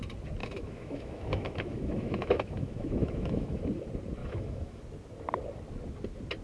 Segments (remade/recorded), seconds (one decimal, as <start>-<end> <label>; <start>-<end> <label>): 0.0-0.4 recorded; 0.4-3.6 remade; 3.6-4.2 recorded; 4.2-4.8 remade; 4.8-6.4 recorded